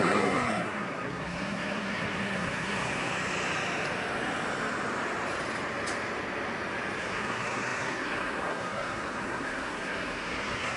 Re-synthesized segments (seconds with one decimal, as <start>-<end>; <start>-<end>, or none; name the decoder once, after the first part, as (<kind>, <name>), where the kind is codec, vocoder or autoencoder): 0.0-3.1 (codec, SNAC); 7.0-10.8